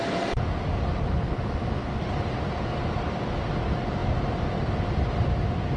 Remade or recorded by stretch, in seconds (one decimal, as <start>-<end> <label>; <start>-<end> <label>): 0.0-5.8 recorded